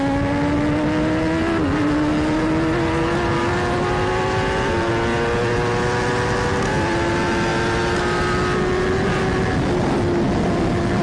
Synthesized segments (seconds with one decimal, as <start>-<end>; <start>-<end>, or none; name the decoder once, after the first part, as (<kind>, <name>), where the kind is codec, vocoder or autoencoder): none